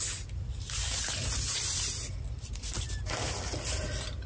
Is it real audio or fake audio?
real